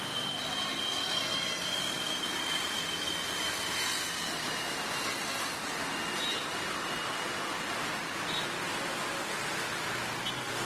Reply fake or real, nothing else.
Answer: real